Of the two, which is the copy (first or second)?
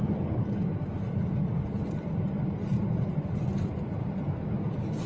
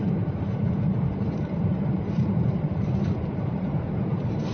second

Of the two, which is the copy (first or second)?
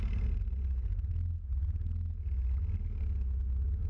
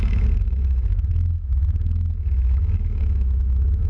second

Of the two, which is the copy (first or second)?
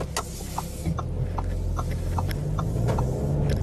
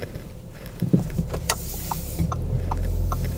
second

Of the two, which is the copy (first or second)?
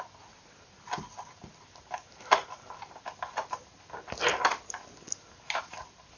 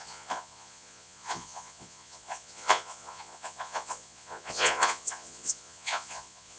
second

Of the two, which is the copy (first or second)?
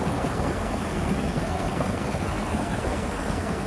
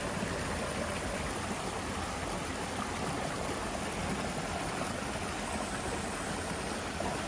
first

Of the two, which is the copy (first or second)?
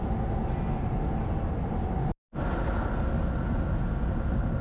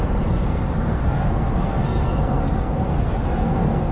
second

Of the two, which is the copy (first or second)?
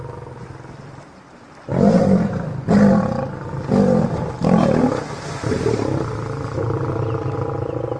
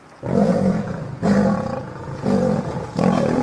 second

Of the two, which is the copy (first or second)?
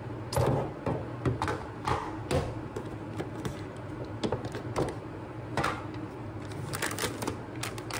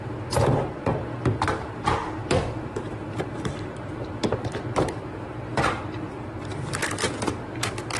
second